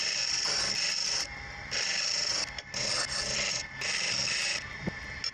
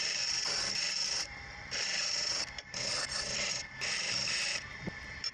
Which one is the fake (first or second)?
second